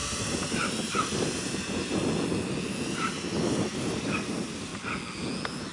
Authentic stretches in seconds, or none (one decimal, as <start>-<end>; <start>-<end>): 2.0-2.9; 4.7-5.7